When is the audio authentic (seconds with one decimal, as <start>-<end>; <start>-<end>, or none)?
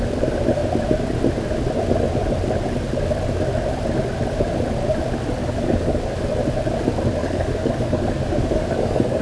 0.0-5.4; 6.0-7.2